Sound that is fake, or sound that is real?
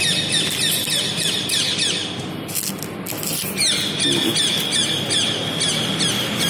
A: real